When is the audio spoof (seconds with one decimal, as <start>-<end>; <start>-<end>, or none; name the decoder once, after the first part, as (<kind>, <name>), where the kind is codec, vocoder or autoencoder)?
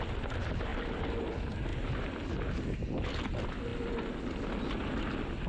1.7-2.3 (vocoder, BigVGAN v2)